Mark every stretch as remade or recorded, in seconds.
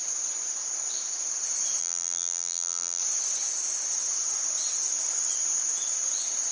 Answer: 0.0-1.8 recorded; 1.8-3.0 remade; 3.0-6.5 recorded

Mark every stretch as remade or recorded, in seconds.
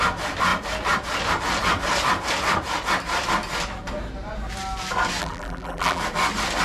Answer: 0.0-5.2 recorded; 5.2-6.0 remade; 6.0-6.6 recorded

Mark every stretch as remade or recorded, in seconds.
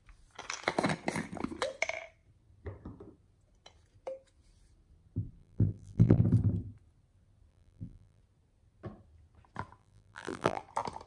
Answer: 0.0-5.4 recorded; 5.4-6.2 remade; 6.2-7.5 recorded; 7.5-8.2 remade; 8.2-9.8 recorded; 9.8-10.6 remade; 10.6-11.1 recorded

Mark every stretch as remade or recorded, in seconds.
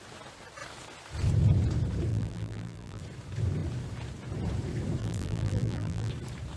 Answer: 0.0-2.1 recorded; 2.1-3.0 remade; 3.0-5.0 recorded; 5.0-6.1 remade; 6.1-6.6 recorded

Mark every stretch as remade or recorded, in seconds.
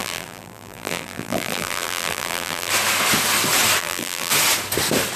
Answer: 0.0-2.7 remade; 2.7-3.8 recorded; 3.8-4.3 remade; 4.3-5.2 recorded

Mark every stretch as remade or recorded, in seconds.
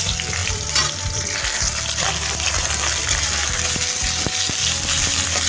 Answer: 0.0-0.4 recorded; 0.4-3.7 remade; 3.7-4.6 recorded; 4.6-5.5 remade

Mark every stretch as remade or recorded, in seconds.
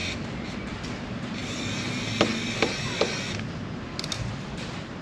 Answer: 0.0-5.0 recorded